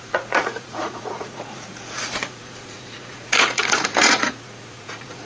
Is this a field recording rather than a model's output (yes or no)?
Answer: no